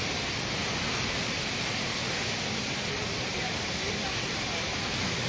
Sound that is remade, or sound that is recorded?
recorded